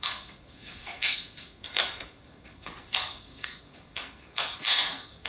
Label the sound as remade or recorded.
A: remade